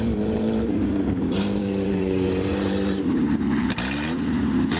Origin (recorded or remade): remade